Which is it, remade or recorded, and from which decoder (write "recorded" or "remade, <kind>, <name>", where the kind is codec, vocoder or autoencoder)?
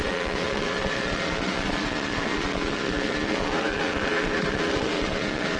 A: remade, vocoder, Vocos